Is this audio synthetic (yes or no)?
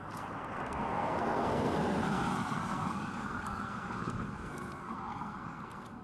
yes